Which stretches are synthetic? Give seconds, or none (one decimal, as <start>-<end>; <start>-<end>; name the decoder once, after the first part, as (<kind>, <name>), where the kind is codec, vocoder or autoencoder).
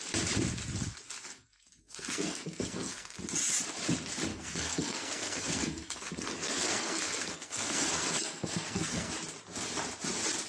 1.3-3.2 (codec, SNAC); 4.3-9.1